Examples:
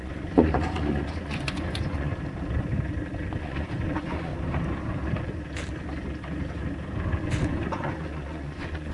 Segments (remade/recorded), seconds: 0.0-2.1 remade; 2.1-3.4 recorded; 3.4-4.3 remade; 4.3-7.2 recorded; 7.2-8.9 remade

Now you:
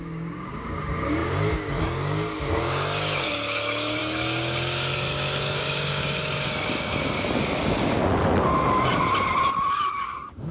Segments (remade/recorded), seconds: 0.0-8.0 remade; 8.0-9.9 recorded; 9.9-10.5 remade

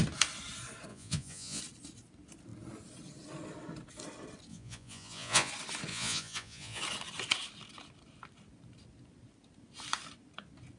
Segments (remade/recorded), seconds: 0.0-0.9 recorded; 0.9-1.6 remade; 1.6-4.5 recorded; 4.5-5.5 remade; 5.5-5.9 recorded; 5.9-6.8 remade; 6.8-10.8 recorded

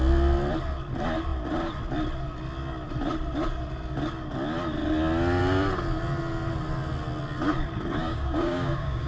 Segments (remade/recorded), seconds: 0.0-8.0 recorded; 8.0-9.1 remade

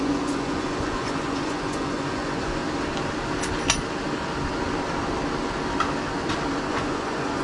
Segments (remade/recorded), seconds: 0.0-2.6 remade; 2.6-6.7 recorded; 6.7-7.4 remade

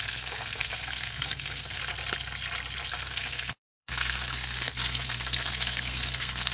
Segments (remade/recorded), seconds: 0.0-1.8 remade; 1.8-2.9 recorded; 2.9-6.5 remade

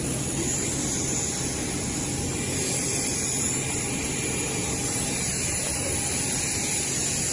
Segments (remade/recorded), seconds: 0.0-2.8 recorded; 2.8-7.3 remade